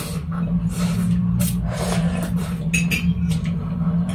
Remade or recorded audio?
recorded